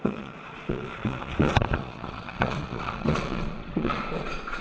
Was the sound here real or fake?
fake